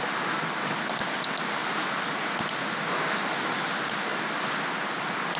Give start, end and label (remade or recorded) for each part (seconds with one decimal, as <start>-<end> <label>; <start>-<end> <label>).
0.0-5.4 recorded

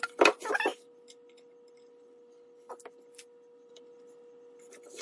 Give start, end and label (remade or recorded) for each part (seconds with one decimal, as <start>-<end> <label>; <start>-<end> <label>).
0.0-5.0 recorded

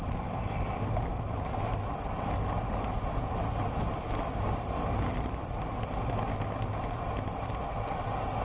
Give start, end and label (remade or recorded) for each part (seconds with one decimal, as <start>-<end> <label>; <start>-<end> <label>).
0.0-8.4 recorded

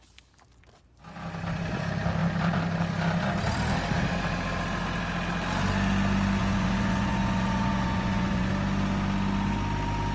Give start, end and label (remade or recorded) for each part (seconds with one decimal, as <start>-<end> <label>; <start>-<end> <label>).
0.0-6.4 recorded; 6.4-8.5 remade; 8.5-10.1 recorded